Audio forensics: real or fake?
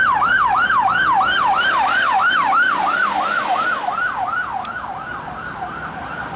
real